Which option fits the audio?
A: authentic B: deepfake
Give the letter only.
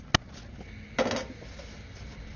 A